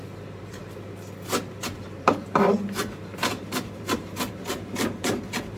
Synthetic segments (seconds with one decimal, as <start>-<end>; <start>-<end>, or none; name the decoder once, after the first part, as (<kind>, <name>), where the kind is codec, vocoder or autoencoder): 0.0-0.6 (vocoder, BigVGAN v2); 1.7-5.6